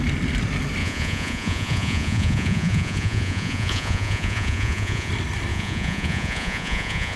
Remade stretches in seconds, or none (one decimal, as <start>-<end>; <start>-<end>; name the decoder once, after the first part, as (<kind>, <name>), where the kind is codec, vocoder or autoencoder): 0.8-5.1 (vocoder, Vocos); 5.5-7.2